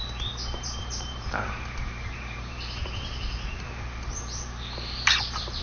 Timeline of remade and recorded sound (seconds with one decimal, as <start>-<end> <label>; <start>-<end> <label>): 0.0-0.6 recorded; 0.6-5.6 remade